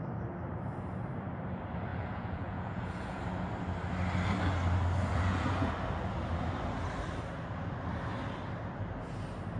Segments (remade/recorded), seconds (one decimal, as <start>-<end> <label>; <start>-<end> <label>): 0.0-1.9 recorded; 1.9-3.2 remade; 3.2-5.1 recorded; 5.1-5.7 remade; 5.7-9.6 recorded